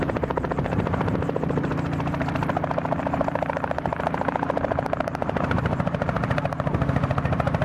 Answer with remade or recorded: remade